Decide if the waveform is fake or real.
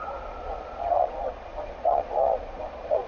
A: fake